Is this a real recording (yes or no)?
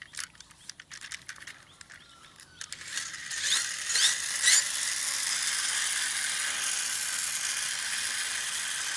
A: yes